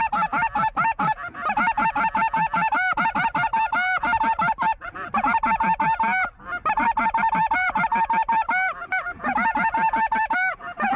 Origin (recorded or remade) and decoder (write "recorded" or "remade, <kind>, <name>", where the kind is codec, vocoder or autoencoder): recorded